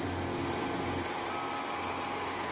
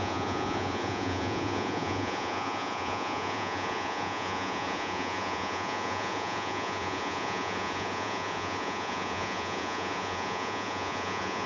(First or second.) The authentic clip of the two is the first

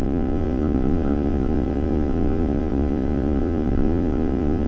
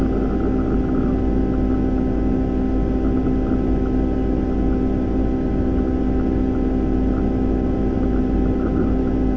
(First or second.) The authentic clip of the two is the second